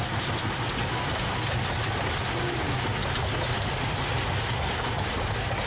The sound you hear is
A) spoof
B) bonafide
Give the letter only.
B